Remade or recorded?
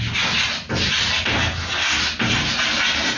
recorded